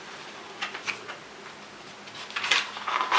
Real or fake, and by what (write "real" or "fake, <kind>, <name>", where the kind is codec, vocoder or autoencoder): real